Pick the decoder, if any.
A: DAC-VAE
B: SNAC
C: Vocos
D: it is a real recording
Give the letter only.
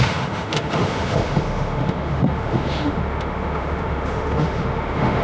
A